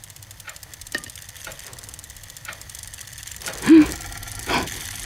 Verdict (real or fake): real